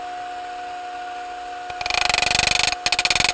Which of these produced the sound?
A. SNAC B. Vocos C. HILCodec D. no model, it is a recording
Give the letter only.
D